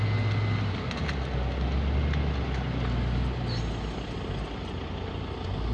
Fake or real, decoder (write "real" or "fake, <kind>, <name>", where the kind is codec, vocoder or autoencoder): real